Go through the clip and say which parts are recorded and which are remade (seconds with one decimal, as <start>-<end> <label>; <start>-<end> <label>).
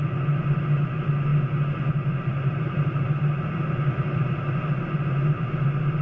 0.0-2.3 recorded; 2.3-5.5 remade; 5.5-6.0 recorded